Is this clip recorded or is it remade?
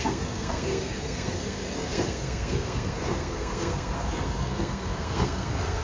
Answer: remade